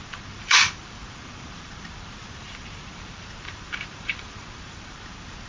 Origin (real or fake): fake